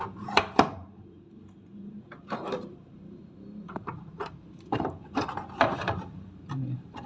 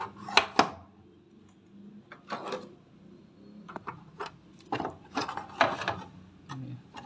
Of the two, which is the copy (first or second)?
first